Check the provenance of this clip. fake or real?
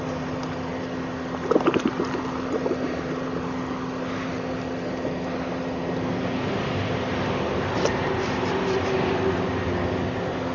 real